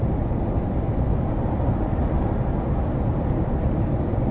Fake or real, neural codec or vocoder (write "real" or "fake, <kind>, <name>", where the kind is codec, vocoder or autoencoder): real